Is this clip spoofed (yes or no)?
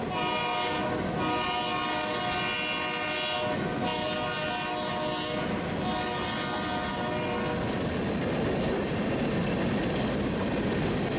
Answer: no